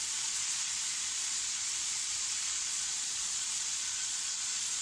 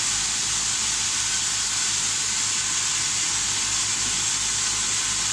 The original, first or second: second